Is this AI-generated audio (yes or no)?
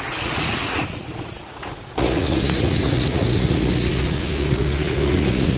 yes